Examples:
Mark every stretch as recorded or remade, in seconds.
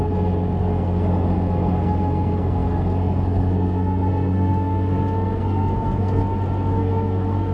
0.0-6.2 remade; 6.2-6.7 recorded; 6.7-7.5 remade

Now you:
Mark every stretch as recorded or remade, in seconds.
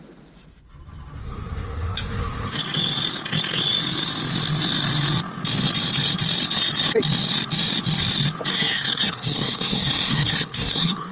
0.0-1.2 recorded; 1.2-2.6 remade; 2.6-8.5 recorded; 8.5-11.1 remade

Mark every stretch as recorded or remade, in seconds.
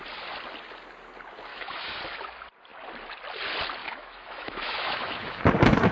0.0-1.5 recorded; 1.5-2.0 remade; 2.0-3.8 recorded; 3.8-5.4 remade; 5.4-5.9 recorded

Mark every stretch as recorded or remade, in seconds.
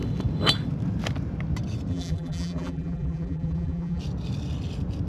0.0-1.9 recorded; 1.9-4.0 remade; 4.0-5.1 recorded